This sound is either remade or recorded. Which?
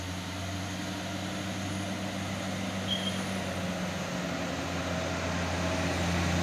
recorded